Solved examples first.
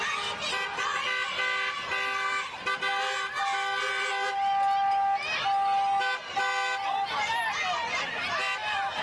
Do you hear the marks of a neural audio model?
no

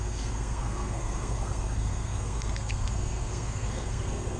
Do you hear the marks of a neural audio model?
yes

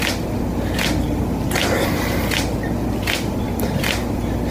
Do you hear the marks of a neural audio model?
no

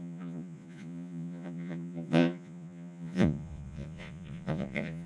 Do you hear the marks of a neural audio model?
yes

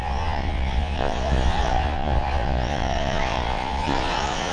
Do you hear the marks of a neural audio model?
yes